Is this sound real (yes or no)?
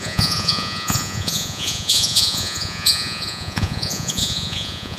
no